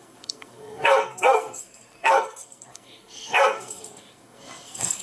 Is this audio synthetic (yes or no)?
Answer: yes